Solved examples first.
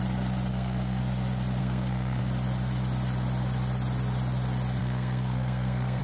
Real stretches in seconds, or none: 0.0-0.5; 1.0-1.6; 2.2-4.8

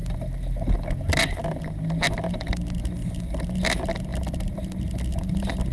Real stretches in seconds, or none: 0.0-5.7

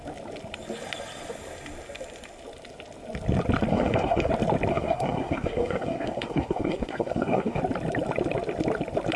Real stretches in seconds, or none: 0.0-3.7; 4.3-4.7; 7.6-9.2

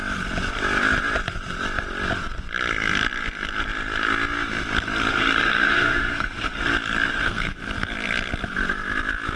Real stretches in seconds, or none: 0.0-5.1; 6.6-7.1; 7.6-9.4

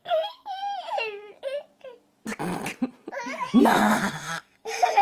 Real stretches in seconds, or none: 0.6-3.6